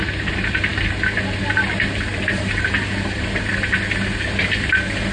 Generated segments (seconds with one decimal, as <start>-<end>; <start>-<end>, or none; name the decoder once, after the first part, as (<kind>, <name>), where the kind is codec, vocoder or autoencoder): 2.1-2.6 (vocoder, BigVGAN v2)